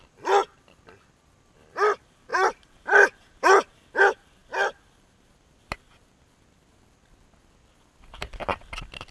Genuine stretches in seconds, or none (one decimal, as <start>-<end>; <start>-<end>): 0.0-2.3; 4.0-9.1